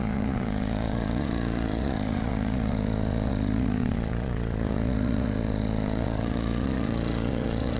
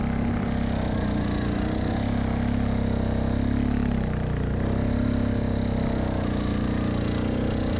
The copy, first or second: first